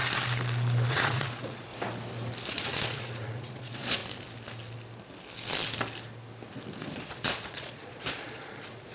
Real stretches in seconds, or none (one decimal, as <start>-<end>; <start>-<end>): 0.0-0.9; 1.7-2.5; 4.0-6.8